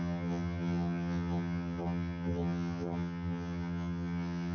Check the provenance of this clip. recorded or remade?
remade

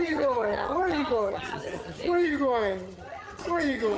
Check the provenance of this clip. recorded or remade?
remade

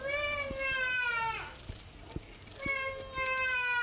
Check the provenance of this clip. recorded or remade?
recorded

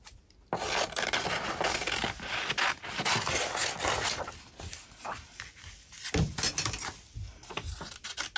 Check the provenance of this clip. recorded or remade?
recorded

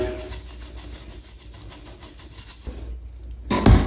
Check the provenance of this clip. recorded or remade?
recorded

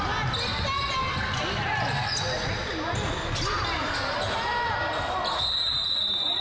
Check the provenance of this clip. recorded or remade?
recorded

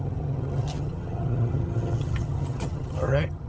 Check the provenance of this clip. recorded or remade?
remade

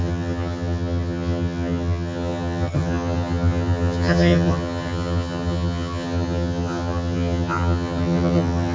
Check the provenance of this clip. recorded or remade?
remade